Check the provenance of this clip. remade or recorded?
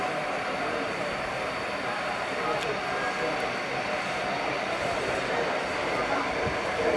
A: recorded